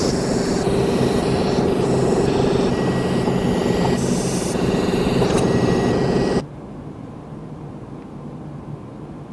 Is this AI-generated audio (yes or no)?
no